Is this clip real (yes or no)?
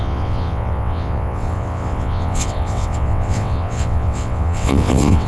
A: no